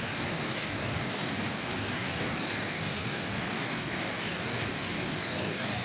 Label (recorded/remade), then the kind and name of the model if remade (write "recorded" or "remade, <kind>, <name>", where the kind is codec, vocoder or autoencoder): remade, codec, DAC